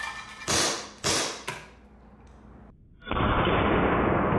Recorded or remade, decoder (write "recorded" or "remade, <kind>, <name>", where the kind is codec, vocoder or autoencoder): recorded